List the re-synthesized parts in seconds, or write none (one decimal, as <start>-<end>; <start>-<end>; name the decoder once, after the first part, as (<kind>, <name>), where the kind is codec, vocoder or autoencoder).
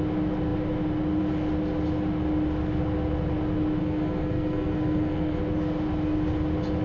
3.8-5.4 (codec, SNAC)